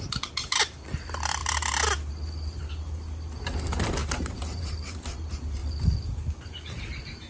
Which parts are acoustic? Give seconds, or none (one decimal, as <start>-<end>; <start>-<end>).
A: 0.0-4.0; 5.0-5.6